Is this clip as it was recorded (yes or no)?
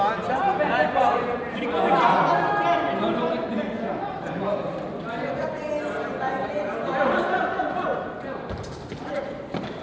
yes